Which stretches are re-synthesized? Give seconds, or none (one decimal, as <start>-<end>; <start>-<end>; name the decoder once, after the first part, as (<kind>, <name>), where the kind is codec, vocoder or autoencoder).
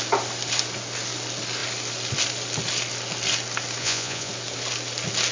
3.8-4.3 (vocoder, Vocos)